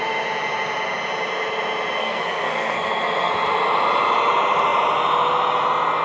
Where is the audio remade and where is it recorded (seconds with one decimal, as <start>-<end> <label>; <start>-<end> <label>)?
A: 0.0-2.0 recorded; 2.0-3.3 remade; 3.3-6.0 recorded